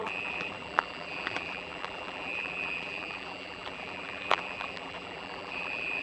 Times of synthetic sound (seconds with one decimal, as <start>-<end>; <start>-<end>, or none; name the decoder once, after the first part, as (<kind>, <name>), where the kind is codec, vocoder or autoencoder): 0.0-6.0 (vocoder, BigVGAN v2)